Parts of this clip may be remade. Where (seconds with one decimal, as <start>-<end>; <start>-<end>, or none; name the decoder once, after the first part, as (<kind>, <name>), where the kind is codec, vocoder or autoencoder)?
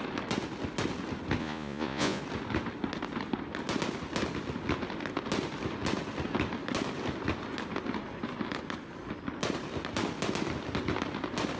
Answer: 1.4-2.2 (vocoder, Vocos)